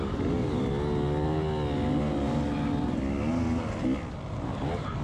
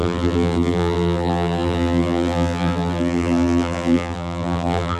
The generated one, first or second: second